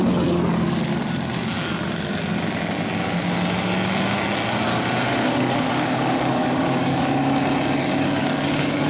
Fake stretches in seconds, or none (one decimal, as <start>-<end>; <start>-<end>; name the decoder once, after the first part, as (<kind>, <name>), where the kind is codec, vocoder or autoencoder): 5.1-7.1 (codec, DAC); 8.2-8.9